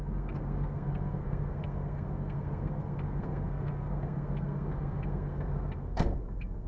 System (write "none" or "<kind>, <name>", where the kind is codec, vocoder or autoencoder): codec, SNAC